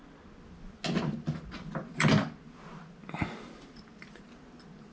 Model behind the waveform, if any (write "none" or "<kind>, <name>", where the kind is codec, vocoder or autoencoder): none